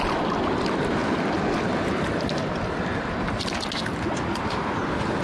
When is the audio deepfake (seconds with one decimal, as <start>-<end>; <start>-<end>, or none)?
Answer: none